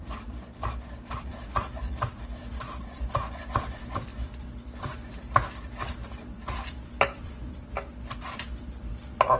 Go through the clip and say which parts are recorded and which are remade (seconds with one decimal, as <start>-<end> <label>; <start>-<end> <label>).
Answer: 0.0-9.4 remade

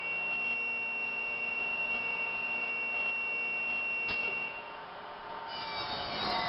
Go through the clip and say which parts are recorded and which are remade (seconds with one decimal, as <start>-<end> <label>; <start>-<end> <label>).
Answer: 0.0-1.0 recorded; 1.0-2.7 remade; 2.7-4.2 recorded; 4.2-5.4 remade; 5.4-6.5 recorded